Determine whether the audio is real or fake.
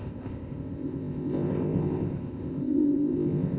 fake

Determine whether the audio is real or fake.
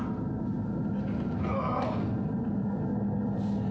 real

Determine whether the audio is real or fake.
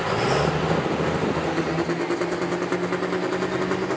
real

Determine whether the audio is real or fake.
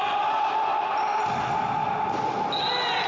real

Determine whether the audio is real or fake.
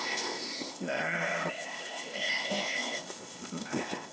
fake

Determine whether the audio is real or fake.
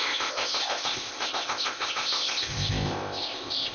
fake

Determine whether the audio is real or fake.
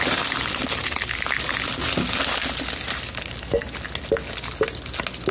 real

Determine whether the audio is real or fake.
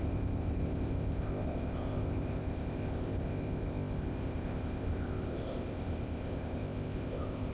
fake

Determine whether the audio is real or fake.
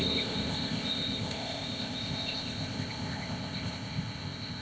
fake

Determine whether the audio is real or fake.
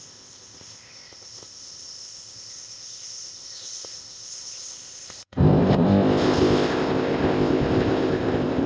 fake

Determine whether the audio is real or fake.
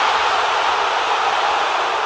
real